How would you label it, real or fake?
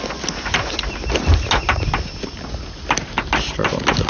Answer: real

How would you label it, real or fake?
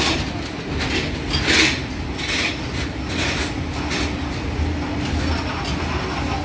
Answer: real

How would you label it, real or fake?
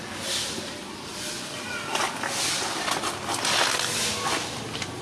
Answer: real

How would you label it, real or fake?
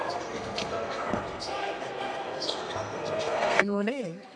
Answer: fake